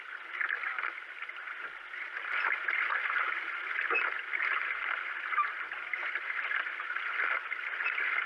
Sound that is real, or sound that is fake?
real